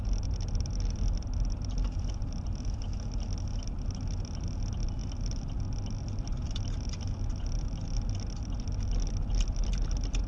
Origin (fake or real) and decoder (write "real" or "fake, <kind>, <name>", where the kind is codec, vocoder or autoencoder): real